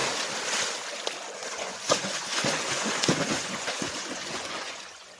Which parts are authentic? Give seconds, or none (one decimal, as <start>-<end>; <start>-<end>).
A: 0.0-1.3